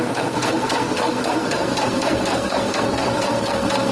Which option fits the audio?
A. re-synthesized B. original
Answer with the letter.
A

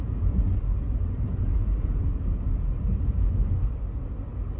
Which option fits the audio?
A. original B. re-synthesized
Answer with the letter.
A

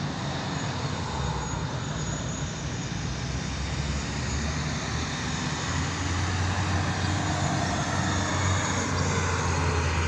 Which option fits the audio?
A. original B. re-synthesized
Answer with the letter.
A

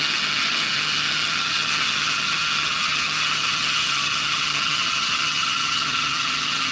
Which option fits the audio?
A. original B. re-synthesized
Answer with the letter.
B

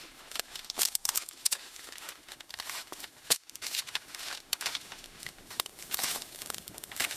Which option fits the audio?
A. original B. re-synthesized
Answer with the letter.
B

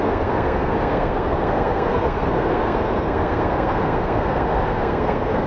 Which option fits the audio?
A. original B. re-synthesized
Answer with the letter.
B